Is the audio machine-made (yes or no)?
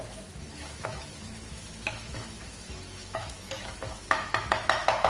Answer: yes